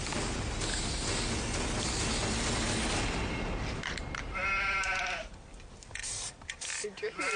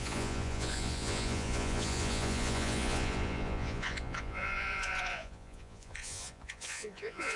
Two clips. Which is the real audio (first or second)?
first